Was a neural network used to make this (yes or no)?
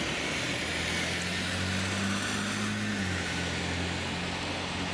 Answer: no